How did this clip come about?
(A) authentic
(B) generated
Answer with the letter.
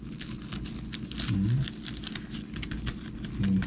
A